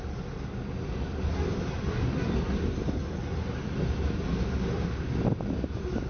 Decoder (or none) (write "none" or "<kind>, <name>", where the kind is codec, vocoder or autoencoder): none